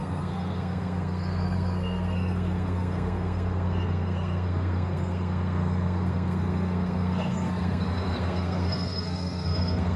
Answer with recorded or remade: remade